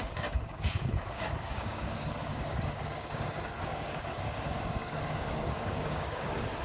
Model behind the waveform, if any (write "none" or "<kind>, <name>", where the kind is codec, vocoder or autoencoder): codec, DAC